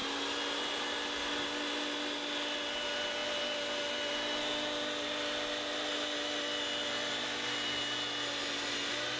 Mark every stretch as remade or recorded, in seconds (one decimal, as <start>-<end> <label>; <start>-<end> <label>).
0.0-9.2 recorded